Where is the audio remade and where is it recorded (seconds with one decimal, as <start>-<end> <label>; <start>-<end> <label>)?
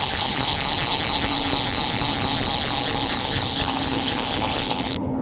0.0-0.5 remade; 0.5-3.1 recorded; 3.1-5.2 remade